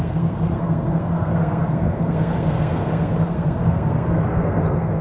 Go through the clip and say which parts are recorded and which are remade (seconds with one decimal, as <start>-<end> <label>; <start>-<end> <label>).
0.0-5.0 remade